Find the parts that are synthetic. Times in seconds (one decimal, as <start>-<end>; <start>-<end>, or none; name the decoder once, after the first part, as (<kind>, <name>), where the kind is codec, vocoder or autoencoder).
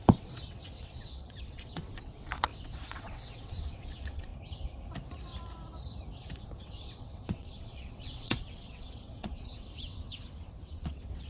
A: 0.0-4.3 (vocoder, WaveNeXt); 6.4-11.3